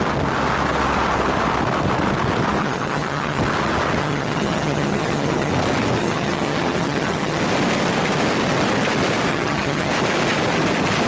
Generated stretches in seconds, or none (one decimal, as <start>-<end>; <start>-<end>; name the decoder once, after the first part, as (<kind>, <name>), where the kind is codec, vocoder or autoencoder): 2.6-3.4 (vocoder, HiFi-GAN); 4.0-5.5; 6.0-7.4; 9.3-9.9